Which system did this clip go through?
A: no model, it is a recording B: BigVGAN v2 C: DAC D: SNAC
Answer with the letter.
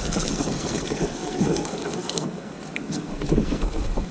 D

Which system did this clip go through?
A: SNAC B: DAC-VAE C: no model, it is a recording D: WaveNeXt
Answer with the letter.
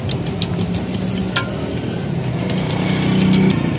C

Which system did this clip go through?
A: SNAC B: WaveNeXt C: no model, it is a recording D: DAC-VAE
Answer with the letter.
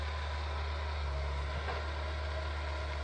C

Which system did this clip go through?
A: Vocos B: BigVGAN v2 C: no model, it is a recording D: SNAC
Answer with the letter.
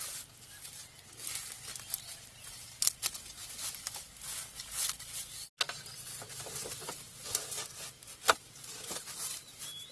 C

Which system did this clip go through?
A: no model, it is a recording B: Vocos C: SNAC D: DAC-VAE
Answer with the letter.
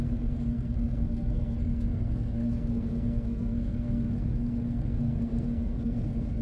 C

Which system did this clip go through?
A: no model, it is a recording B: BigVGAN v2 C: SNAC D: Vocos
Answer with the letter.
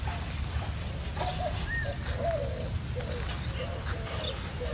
A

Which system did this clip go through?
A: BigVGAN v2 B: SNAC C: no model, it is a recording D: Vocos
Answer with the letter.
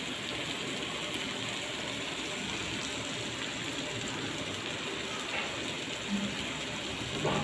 C